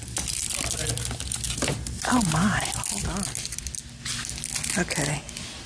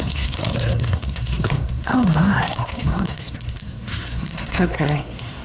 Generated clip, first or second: second